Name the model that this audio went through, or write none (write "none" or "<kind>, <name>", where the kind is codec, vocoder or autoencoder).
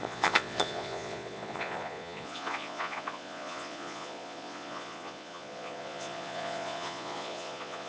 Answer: vocoder, Vocos